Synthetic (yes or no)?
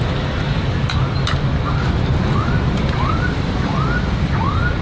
yes